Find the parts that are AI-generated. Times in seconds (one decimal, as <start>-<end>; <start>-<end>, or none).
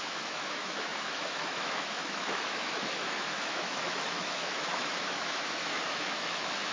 0.0-6.7